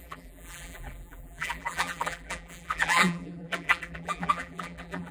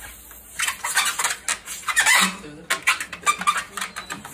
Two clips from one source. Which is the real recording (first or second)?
second